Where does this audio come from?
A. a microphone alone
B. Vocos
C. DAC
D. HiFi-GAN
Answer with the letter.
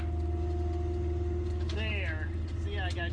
A